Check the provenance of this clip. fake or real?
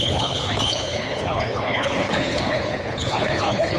fake